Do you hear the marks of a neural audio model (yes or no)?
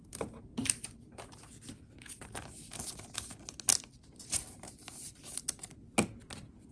no